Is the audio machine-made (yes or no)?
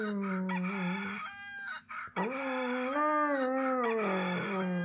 no